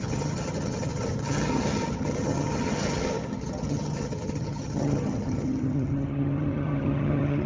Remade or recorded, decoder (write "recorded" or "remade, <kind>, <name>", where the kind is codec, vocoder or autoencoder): remade, vocoder, HiFi-GAN